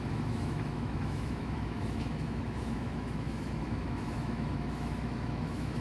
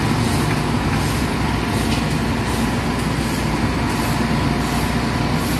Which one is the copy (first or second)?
first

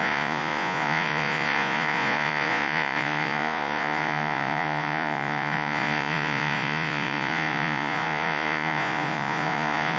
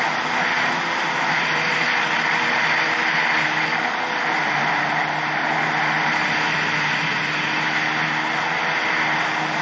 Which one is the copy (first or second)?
first